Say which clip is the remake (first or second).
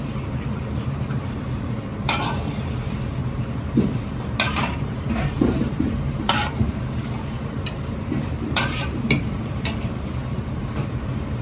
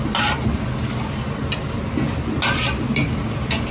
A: first